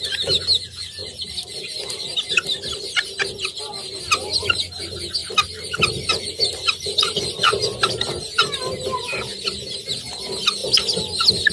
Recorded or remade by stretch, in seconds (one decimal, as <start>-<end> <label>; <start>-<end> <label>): 0.0-1.0 recorded; 1.0-3.6 remade; 3.6-5.2 recorded; 5.2-7.2 remade; 7.2-11.5 recorded